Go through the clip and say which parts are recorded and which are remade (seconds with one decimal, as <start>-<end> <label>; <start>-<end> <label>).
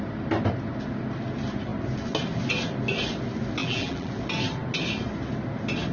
0.0-3.6 recorded; 3.6-4.1 remade; 4.1-5.9 recorded